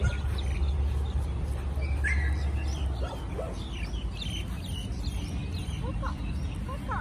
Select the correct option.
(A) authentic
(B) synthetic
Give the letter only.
A